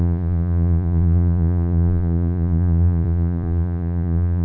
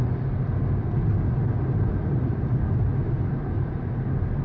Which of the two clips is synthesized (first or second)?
first